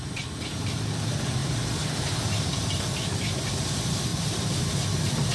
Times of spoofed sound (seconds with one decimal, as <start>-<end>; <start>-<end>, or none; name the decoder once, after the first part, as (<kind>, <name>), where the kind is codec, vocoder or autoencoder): 1.4-3.4 (vocoder, BigVGAN v2); 4.1-4.6